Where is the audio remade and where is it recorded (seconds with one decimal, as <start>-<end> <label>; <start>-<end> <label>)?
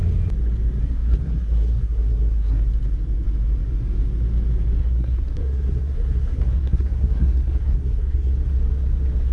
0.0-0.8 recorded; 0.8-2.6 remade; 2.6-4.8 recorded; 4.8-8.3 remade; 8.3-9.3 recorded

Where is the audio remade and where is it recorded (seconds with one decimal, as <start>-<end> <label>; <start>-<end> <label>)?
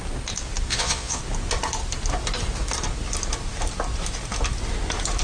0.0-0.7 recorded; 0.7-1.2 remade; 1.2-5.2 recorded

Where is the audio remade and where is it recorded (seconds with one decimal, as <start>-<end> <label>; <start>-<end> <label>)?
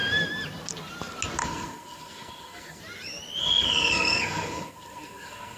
0.0-1.4 recorded; 1.4-2.8 remade; 2.8-3.4 recorded; 3.4-5.6 remade